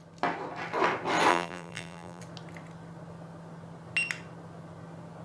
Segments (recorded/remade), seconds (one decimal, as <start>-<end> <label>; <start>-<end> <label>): 0.0-1.3 recorded; 1.3-2.2 remade; 2.2-5.2 recorded